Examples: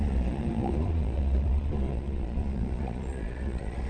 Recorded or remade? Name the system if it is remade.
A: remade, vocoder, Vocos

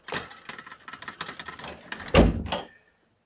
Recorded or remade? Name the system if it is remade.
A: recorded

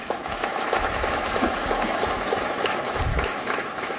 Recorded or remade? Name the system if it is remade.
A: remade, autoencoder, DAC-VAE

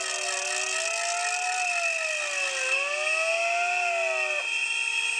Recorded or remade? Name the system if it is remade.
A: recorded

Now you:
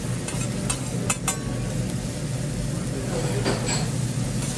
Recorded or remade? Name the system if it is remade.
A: recorded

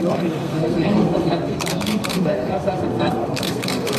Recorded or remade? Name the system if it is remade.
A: remade, codec, SNAC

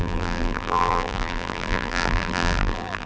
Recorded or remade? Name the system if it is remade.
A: remade, vocoder, BigVGAN v2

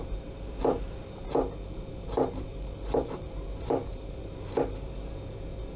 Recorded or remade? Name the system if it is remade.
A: remade, vocoder, BigVGAN v2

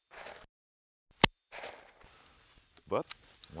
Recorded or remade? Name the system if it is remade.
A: recorded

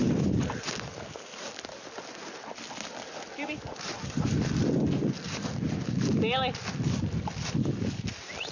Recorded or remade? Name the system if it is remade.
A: recorded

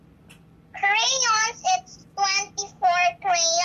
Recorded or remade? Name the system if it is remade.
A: remade, vocoder, BigVGAN v2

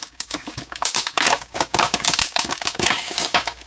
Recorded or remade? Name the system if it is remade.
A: remade, codec, DAC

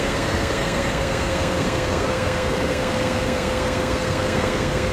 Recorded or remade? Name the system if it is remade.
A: remade, codec, SNAC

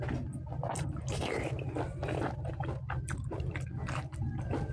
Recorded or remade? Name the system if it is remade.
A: recorded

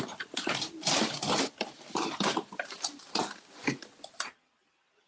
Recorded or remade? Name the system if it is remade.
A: remade, vocoder, BigVGAN v2